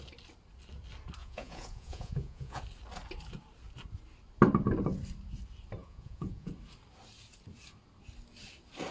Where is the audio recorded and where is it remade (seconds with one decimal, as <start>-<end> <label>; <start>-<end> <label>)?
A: 0.0-1.2 recorded; 1.2-2.6 remade; 2.6-5.8 recorded; 5.8-6.5 remade; 6.5-8.9 recorded